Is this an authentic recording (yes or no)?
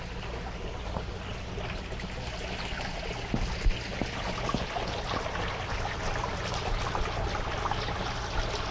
yes